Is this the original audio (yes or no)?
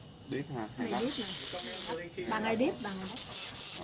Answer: yes